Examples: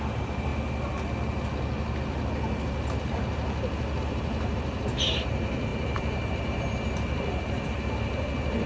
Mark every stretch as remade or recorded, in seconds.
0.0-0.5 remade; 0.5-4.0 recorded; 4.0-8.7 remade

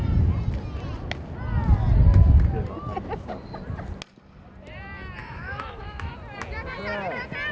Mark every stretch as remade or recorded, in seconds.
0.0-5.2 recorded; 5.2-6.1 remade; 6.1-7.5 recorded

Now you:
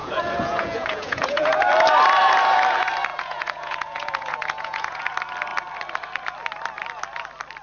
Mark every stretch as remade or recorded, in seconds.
0.0-1.6 remade; 1.6-3.1 recorded; 3.1-5.0 remade; 5.0-7.6 recorded